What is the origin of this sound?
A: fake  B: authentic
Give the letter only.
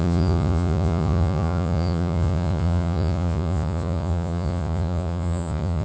A